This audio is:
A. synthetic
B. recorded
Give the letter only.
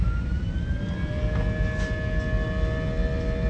B